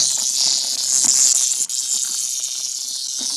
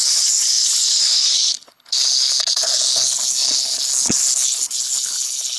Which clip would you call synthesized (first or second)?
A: second